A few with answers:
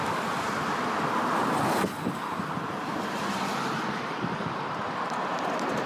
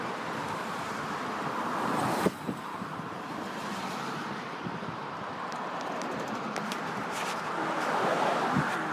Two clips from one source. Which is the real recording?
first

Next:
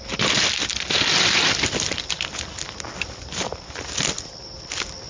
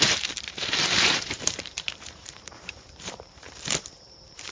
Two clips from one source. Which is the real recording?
first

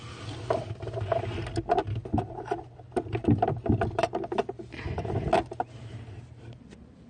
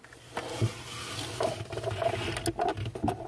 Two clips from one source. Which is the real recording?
second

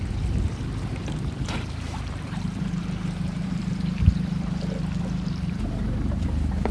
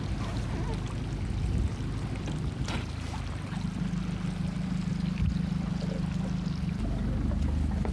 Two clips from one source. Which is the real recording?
second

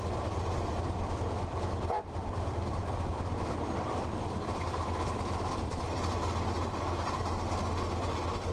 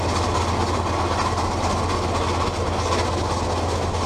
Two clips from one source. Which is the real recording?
second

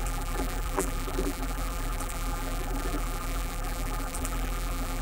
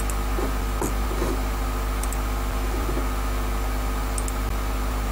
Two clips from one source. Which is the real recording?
second